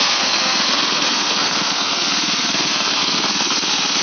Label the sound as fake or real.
fake